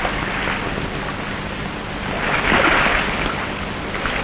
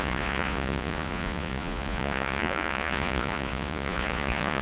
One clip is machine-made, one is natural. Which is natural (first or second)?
first